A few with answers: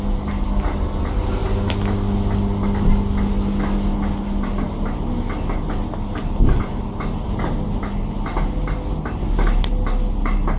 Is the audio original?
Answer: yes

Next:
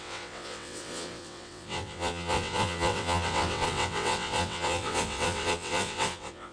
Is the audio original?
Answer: no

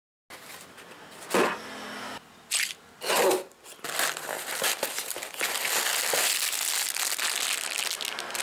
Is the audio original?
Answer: yes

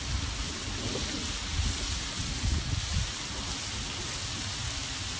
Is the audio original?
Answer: yes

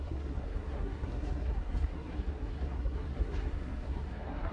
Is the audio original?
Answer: no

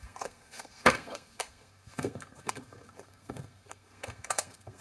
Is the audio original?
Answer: no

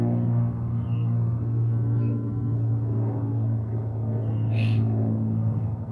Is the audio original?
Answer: no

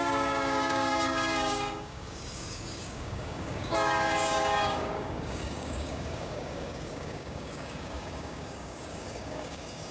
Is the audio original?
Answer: no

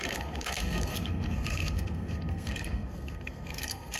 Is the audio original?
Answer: no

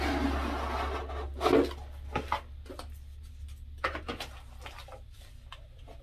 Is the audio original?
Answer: yes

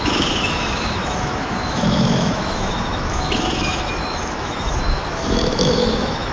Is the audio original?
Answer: no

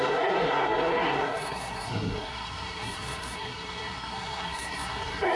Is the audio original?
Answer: no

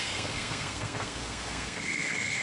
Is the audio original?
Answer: no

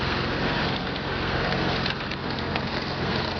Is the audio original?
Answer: no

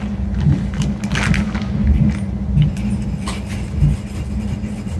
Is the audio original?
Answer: yes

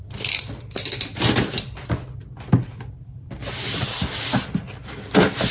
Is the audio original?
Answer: yes